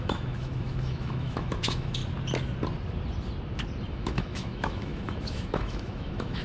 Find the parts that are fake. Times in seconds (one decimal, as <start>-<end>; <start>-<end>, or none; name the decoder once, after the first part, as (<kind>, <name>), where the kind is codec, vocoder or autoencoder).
0.0-2.0 (autoencoder, DAC-VAE); 3.9-6.4